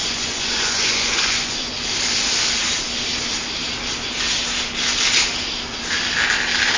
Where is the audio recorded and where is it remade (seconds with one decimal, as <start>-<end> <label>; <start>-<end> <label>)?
0.0-1.7 remade; 1.7-6.8 recorded